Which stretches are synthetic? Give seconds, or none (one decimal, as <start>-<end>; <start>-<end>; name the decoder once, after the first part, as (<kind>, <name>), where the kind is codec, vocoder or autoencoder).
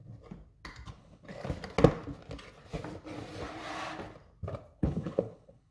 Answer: 0.9-1.4 (codec, HILCodec); 4.8-5.7